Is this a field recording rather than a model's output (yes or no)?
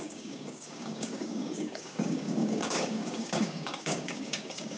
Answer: no